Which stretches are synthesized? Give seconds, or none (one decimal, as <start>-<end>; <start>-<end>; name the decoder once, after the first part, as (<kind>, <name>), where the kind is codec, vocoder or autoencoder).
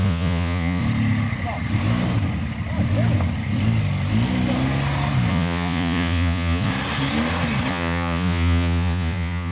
0.0-0.8 (vocoder, Vocos); 5.3-6.7; 7.7-9.5